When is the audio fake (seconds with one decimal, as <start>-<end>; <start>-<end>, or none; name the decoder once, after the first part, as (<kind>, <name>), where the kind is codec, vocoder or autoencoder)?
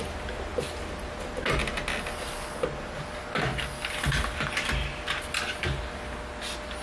3.5-5.8 (vocoder, BigVGAN v2)